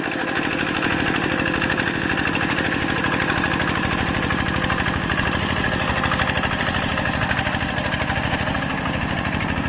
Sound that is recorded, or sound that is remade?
remade